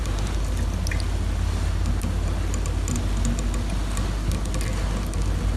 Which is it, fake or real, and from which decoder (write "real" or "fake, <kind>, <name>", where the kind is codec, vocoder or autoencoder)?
real